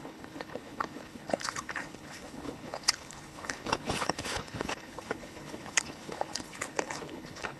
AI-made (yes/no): yes